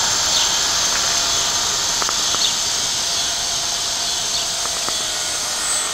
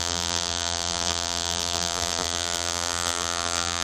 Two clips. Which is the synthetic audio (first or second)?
second